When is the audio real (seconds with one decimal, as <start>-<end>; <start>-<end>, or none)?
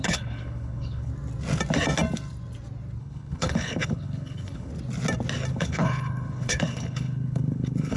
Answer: 1.1-3.0; 4.7-5.5